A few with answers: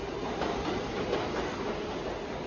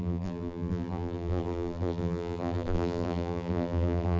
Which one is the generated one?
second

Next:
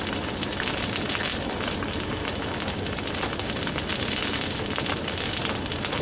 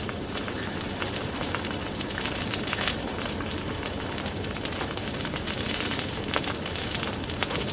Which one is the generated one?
second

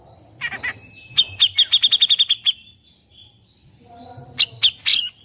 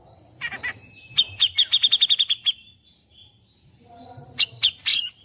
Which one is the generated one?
second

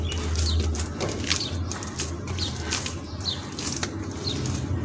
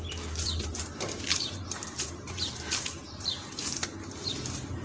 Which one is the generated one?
second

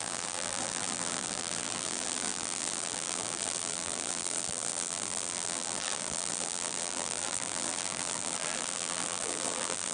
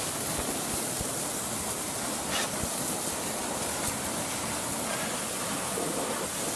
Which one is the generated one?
first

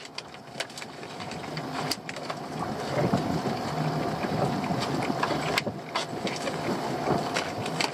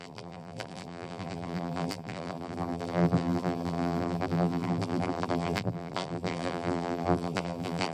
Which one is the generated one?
second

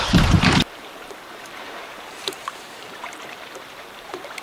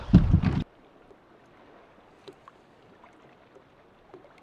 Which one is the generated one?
first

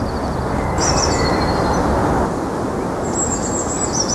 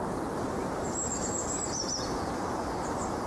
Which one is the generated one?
second